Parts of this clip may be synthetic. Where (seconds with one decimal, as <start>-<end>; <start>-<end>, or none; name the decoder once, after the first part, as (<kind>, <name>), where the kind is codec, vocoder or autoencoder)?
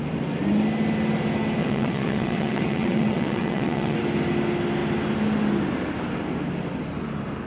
1.6-4.0 (vocoder, WaveNeXt)